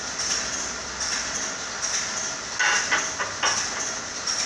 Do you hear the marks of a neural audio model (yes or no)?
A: no